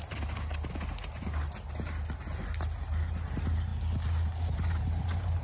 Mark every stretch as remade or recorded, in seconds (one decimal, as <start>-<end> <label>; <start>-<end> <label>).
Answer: 0.0-5.4 recorded